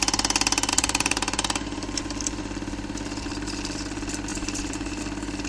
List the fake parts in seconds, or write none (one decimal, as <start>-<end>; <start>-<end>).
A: 0.7-2.4; 4.3-5.0